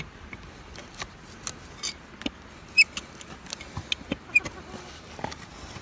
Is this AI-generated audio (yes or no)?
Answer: no